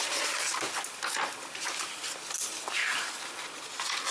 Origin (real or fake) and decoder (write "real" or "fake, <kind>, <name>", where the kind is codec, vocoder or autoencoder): real